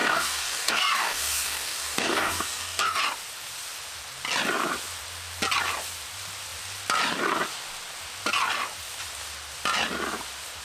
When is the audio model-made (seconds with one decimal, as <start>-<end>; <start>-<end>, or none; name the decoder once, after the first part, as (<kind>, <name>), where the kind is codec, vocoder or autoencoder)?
0.0-3.0 (codec, DAC)